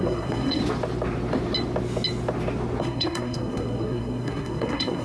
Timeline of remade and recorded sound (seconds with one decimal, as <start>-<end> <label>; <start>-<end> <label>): 0.0-0.6 remade; 0.6-2.8 recorded; 2.8-5.0 remade

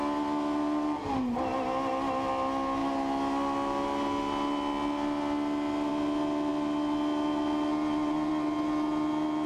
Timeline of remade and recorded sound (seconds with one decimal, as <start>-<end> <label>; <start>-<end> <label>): 0.0-9.5 recorded

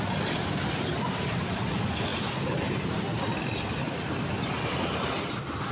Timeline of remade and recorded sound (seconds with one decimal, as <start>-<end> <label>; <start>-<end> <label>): 0.0-5.7 recorded

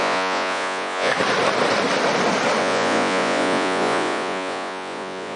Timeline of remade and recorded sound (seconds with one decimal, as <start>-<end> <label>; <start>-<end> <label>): 0.0-1.1 remade; 1.1-2.6 recorded; 2.6-5.4 remade

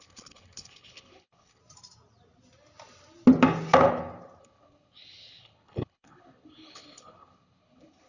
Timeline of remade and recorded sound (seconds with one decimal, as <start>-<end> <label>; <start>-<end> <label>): 0.0-1.6 remade; 1.6-4.4 recorded; 4.4-8.1 remade

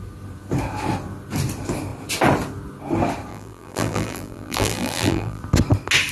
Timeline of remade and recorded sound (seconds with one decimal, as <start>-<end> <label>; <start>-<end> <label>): 0.0-3.3 recorded; 3.3-5.4 remade; 5.4-6.1 recorded

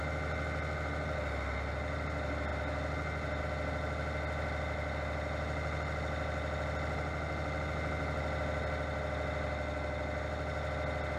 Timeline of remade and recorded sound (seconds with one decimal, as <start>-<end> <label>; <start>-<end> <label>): 0.0-11.2 recorded

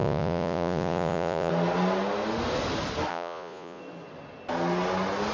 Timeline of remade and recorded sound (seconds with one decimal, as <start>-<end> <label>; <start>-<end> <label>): 0.0-1.5 remade; 1.5-3.1 recorded; 3.1-3.8 remade; 3.8-5.3 recorded